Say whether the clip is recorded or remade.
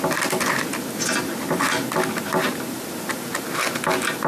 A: recorded